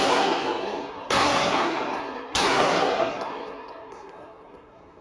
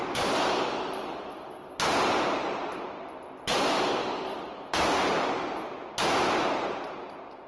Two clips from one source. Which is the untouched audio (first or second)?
second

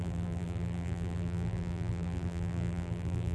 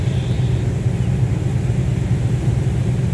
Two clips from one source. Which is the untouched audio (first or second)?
second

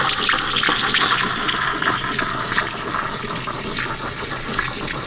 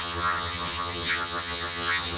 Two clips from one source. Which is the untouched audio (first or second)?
first